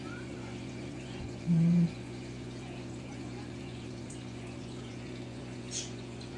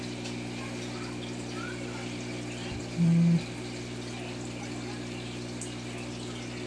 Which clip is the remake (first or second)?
first